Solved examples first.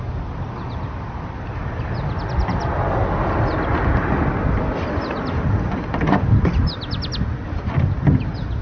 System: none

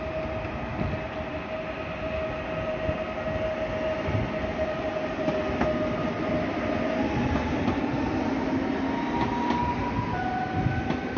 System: none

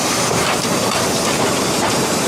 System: vocoder, BigVGAN v2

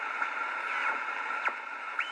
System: vocoder, BigVGAN v2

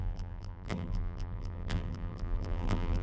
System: vocoder, BigVGAN v2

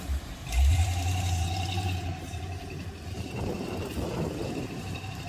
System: vocoder, BigVGAN v2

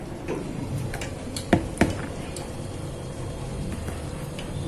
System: vocoder, BigVGAN v2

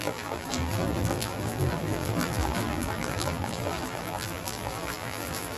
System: vocoder, BigVGAN v2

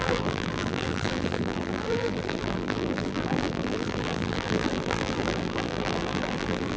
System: vocoder, BigVGAN v2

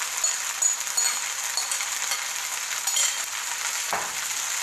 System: none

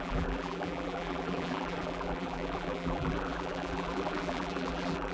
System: vocoder, BigVGAN v2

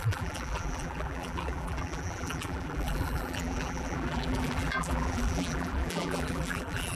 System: vocoder, BigVGAN v2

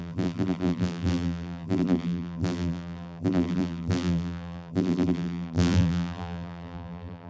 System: vocoder, BigVGAN v2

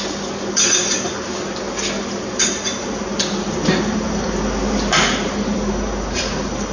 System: vocoder, BigVGAN v2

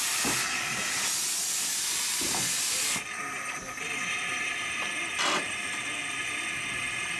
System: none